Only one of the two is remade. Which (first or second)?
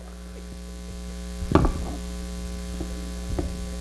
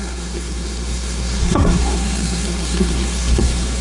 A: second